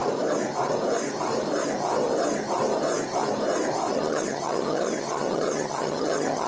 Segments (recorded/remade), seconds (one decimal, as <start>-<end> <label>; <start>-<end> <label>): 0.0-3.9 recorded; 3.9-6.5 remade